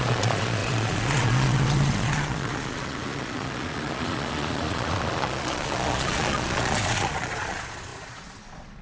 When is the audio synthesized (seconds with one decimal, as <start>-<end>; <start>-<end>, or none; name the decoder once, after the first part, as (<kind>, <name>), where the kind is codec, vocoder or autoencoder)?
0.0-8.8 (vocoder, Vocos)